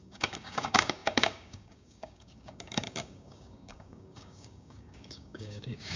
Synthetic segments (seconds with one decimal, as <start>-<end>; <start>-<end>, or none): 0.0-6.0